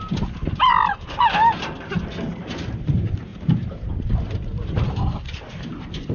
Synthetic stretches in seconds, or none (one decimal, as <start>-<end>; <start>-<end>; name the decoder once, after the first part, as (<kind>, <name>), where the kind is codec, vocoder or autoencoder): 2.3-2.9 (vocoder, BigVGAN v2); 3.3-4.9